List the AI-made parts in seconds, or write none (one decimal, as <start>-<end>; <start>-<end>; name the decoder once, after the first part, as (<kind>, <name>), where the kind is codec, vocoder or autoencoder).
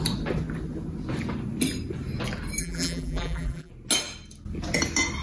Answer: 2.6-3.7 (vocoder, BigVGAN v2)